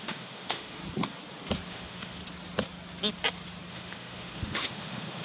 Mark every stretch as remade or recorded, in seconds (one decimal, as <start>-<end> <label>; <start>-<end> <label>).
0.0-0.8 remade; 0.8-1.7 recorded; 1.7-2.2 remade; 2.2-3.7 recorded; 3.7-5.2 remade